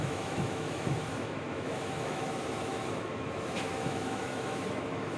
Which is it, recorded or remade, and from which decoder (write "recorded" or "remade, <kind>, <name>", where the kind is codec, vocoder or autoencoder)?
remade, autoencoder, DAC-VAE